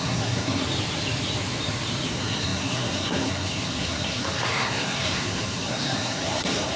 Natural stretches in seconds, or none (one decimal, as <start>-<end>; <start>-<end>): 0.6-2.1